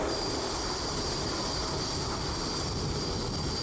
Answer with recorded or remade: recorded